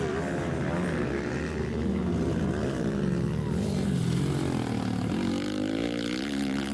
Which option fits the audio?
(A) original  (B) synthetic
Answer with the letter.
A